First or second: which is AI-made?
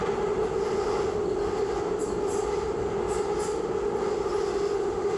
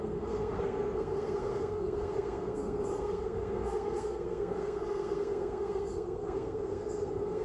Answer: second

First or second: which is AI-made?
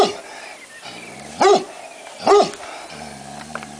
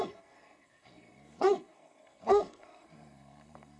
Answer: second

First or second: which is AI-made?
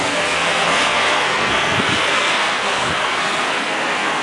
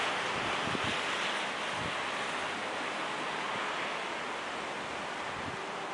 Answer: first